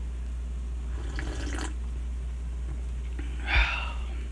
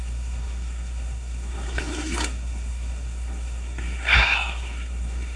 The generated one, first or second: second